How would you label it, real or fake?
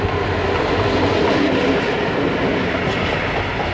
real